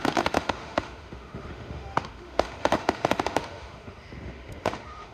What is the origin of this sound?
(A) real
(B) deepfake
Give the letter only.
B